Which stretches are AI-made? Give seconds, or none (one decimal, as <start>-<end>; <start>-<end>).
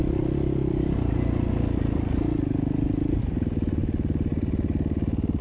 none